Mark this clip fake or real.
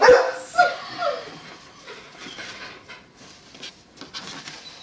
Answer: real